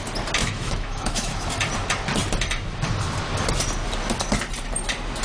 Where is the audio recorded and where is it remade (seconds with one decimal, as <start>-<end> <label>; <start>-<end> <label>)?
0.0-0.4 recorded; 0.4-1.5 remade; 1.5-5.2 recorded